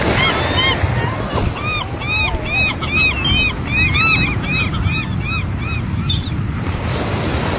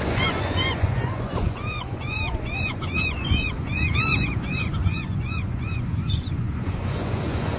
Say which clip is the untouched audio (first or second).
first